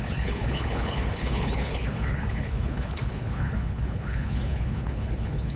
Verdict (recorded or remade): remade